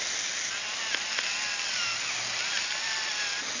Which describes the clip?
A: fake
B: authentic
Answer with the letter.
B